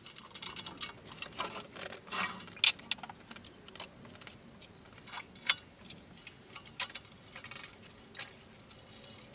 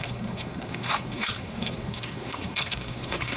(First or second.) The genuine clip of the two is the first